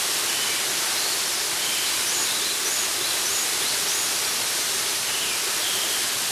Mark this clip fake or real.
real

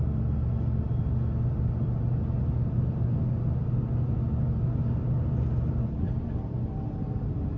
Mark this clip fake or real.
real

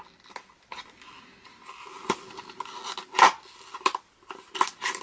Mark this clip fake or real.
real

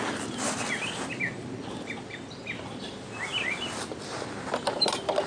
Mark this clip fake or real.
real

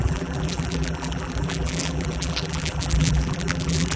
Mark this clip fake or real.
fake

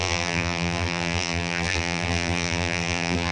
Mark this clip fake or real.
fake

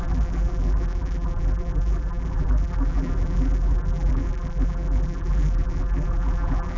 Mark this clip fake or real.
fake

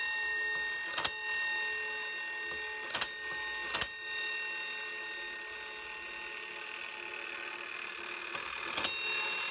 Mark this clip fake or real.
real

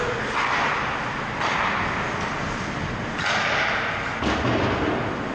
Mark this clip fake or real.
real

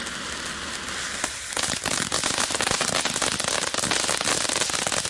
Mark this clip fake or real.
real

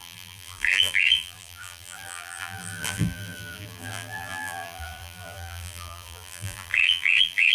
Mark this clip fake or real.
fake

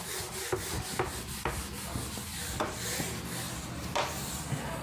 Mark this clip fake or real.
real